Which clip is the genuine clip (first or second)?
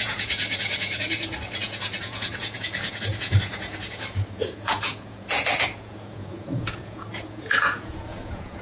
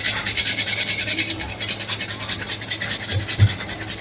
second